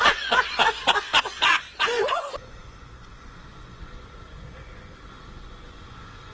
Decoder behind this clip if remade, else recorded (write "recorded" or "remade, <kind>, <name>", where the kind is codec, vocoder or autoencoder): remade, vocoder, Vocos